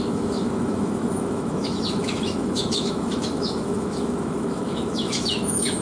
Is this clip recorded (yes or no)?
no